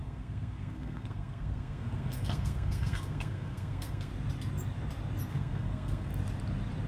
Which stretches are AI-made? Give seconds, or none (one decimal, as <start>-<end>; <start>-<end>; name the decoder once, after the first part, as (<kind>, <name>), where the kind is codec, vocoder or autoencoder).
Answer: 0.0-4.1 (codec, SNAC); 5.3-6.1